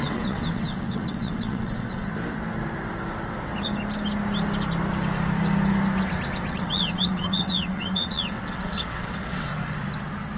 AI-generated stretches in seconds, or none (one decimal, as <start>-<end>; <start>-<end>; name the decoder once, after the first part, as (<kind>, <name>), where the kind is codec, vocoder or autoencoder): 0.0-2.1 (vocoder, WaveNeXt); 6.5-9.5

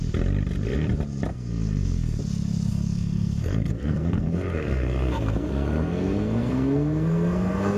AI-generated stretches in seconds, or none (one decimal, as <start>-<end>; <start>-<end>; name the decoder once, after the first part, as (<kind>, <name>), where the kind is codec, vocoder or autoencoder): 1.3-2.2 (codec, SNAC); 2.7-7.8